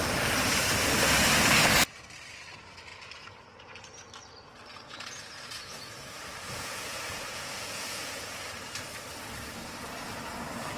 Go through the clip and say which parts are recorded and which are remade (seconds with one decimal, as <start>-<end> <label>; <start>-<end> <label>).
0.0-2.9 recorded; 2.9-3.4 remade; 3.4-4.7 recorded; 4.7-8.4 remade; 8.4-10.8 recorded